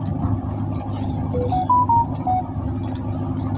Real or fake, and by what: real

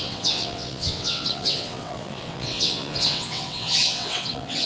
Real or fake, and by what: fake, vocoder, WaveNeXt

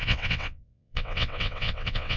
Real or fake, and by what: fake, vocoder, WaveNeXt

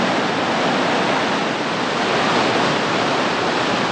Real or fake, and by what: real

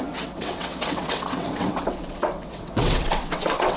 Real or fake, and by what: fake, vocoder, WaveNeXt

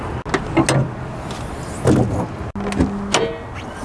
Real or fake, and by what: real